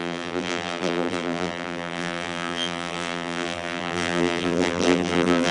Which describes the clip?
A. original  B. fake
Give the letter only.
B